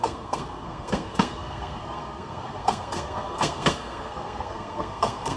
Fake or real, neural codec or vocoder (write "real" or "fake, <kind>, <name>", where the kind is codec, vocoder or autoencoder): fake, codec, SNAC